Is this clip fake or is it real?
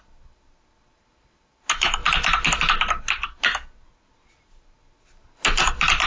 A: real